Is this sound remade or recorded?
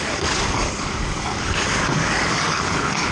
remade